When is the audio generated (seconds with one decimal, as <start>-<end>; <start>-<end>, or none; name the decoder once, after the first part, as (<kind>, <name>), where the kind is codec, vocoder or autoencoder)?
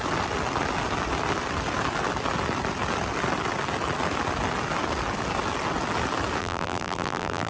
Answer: 6.4-7.5 (vocoder, BigVGAN v2)